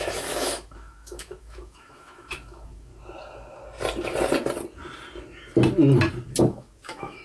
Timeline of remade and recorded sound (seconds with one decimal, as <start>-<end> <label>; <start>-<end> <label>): 0.0-2.9 remade; 2.9-6.4 recorded; 6.4-7.2 remade